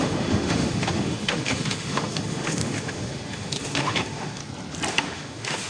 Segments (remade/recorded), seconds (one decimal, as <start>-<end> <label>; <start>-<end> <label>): 0.0-4.4 remade; 4.4-4.9 recorded; 4.9-5.7 remade